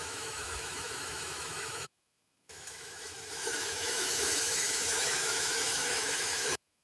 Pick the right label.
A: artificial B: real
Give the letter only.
A